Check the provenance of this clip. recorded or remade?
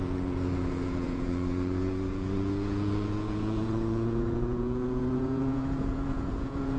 remade